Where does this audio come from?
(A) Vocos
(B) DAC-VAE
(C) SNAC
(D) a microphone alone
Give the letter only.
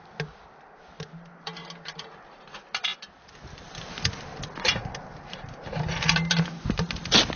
D